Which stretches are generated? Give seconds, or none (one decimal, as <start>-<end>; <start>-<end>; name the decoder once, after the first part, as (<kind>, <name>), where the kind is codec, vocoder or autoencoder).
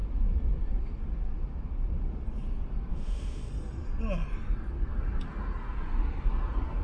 2.9-3.5 (autoencoder, DAC-VAE)